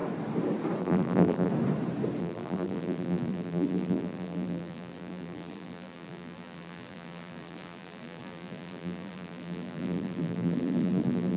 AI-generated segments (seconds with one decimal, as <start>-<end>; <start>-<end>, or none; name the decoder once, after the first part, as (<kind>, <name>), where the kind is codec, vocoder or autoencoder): 0.8-1.5 (vocoder, BigVGAN v2); 2.2-11.4